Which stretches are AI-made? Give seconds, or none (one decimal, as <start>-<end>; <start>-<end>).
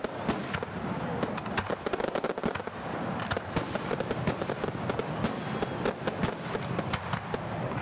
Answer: none